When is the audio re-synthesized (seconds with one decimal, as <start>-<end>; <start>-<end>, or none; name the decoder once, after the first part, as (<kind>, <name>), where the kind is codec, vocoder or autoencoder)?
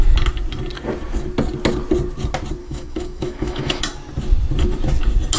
2.6-3.8 (autoencoder, DAC-VAE)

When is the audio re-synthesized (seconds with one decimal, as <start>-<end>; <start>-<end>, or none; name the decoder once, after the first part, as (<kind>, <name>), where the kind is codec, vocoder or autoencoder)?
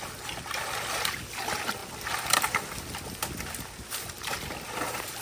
none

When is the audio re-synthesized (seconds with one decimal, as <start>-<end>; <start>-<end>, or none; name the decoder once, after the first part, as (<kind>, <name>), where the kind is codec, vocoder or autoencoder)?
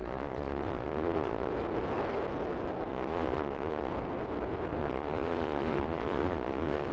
0.0-1.5 (vocoder, Vocos); 2.9-3.9; 4.8-6.9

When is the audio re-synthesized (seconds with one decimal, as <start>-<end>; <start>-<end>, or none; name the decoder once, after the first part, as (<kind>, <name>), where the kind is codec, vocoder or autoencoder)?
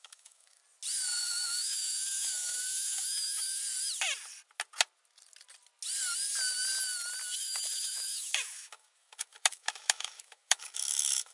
0.0-0.6 (autoencoder, DAC-VAE); 1.2-3.6; 7.4-11.3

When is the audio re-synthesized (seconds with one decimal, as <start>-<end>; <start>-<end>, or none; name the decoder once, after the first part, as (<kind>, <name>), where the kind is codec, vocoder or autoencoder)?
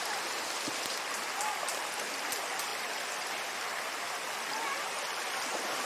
1.7-2.3 (vocoder, BigVGAN v2)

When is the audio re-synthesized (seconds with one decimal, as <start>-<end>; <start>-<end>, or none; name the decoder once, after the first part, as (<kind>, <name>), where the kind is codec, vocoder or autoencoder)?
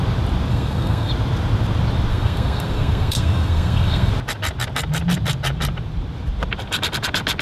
0.5-1.1 (codec, SNAC); 2.1-4.1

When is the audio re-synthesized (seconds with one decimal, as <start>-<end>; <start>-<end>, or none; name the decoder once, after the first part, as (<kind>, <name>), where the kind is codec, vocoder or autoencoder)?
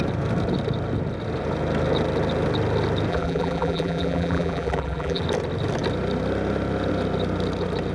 3.1-5.2 (vocoder, BigVGAN v2)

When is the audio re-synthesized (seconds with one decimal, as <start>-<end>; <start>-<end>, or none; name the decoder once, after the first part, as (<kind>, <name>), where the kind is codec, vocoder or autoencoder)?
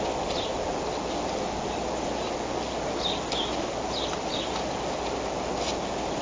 none